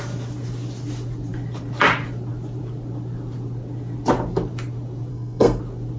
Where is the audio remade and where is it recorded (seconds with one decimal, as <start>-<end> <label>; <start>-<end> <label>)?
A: 0.0-5.1 recorded; 5.1-5.6 remade; 5.6-6.0 recorded